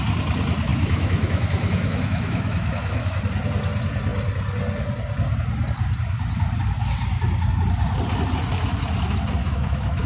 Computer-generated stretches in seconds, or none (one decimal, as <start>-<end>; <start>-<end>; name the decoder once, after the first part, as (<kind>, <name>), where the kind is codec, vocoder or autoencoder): 0.7-3.2 (autoencoder, DAC-VAE); 9.4-10.1